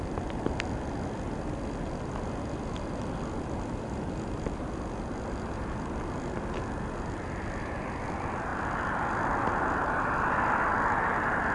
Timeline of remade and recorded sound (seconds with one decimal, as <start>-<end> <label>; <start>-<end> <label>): 0.0-11.5 recorded